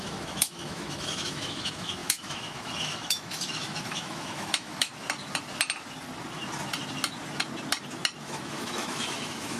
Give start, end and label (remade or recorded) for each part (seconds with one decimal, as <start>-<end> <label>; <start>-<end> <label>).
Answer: 0.0-4.9 remade; 4.9-8.2 recorded; 8.2-9.6 remade